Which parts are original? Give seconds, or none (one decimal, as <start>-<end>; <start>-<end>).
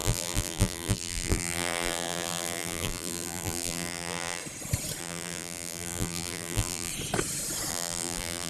4.4-5.0; 6.9-7.7